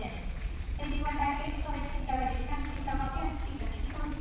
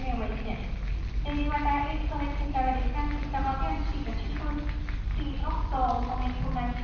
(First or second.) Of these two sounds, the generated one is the first